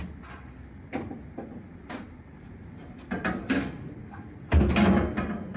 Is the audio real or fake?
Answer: real